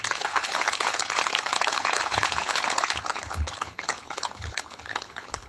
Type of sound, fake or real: fake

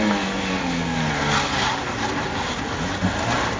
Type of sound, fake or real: real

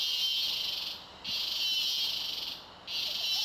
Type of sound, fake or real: real